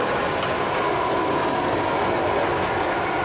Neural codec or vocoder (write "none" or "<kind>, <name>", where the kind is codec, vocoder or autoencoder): none